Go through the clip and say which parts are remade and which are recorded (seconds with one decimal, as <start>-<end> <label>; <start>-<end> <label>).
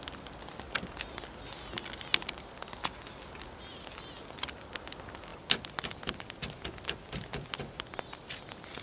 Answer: 0.0-8.8 recorded